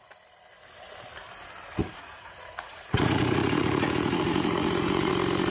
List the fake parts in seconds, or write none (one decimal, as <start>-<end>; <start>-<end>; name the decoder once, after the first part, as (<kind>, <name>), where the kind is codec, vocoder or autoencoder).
1.8-5.1 (vocoder, Vocos)